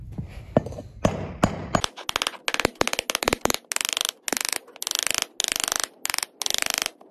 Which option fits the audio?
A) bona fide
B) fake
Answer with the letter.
A